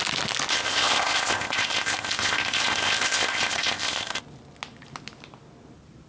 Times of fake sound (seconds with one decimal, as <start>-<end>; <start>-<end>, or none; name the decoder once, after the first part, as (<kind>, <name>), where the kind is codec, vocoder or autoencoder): 0.5-4.2 (codec, ZipCodec)